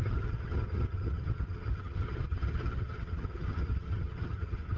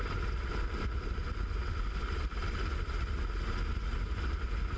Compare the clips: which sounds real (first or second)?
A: second